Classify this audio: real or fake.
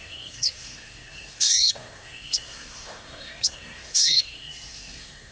fake